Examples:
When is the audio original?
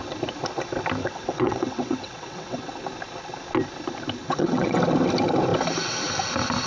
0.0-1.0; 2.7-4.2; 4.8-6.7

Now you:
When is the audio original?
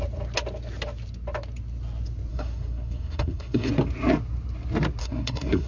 0.0-2.3; 3.7-5.0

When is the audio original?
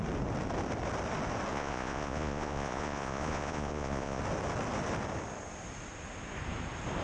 0.0-1.5; 4.2-7.0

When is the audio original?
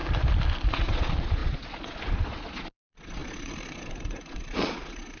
0.0-0.7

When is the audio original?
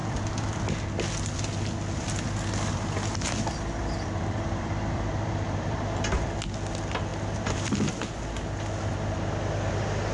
0.7-3.8; 6.2-7.1; 8.0-10.1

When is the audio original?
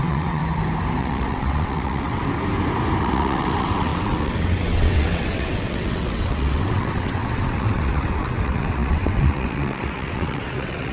0.4-1.0; 2.2-3.0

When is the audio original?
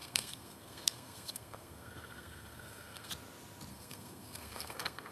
3.1-3.7